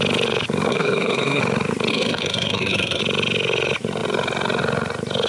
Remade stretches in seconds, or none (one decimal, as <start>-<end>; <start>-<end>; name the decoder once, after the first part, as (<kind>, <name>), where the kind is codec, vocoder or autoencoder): 0.7-1.4 (codec, SNAC); 1.9-3.0